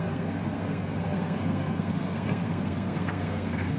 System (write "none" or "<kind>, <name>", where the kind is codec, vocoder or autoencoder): codec, SNAC